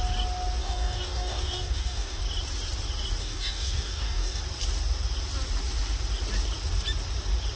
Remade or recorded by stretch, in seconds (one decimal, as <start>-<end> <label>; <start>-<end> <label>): 0.0-0.6 recorded; 0.6-2.2 remade; 2.2-3.2 recorded; 3.2-4.4 remade; 4.4-7.6 recorded

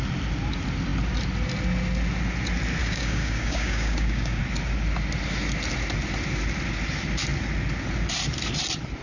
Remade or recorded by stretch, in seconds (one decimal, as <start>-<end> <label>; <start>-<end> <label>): 0.0-2.8 recorded; 2.8-4.4 remade; 4.4-9.0 recorded

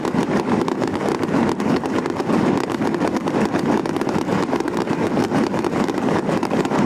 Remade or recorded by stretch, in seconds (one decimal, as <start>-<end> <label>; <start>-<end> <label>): 0.0-1.1 remade; 1.1-1.6 recorded; 1.6-6.9 remade

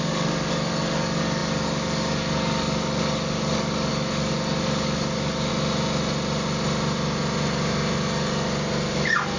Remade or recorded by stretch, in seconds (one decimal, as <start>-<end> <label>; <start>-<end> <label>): 0.0-5.5 remade; 5.5-9.4 recorded

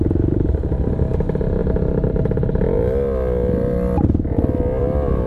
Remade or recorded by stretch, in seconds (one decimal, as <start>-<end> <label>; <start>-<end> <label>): 0.0-5.3 recorded

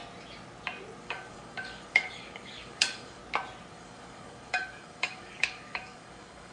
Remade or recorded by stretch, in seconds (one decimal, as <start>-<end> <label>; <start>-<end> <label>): 0.0-1.0 recorded; 1.0-3.2 remade; 3.2-3.7 recorded; 3.7-6.5 remade